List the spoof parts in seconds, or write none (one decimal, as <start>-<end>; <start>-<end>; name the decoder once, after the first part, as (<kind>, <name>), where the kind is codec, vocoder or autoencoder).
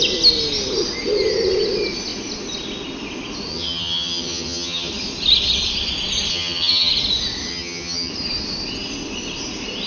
3.5-4.9 (vocoder, HiFi-GAN); 6.3-6.9; 7.5-8.1